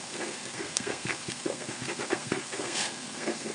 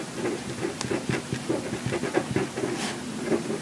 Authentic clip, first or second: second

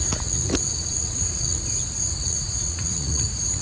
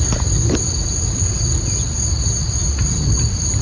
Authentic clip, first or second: second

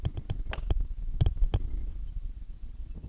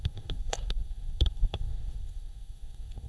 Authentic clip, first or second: first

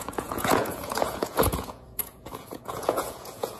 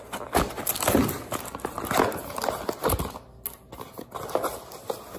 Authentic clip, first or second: second